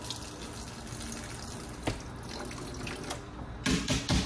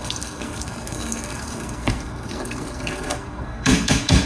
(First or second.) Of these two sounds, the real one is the first